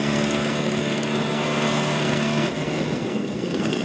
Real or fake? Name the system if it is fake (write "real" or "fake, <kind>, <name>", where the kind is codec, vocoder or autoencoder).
fake, codec, SNAC